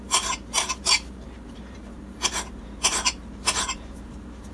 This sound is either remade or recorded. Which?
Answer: remade